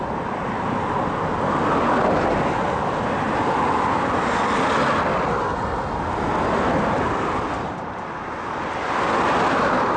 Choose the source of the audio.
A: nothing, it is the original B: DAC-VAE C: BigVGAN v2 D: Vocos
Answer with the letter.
A